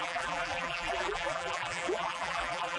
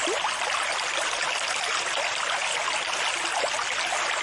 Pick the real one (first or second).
second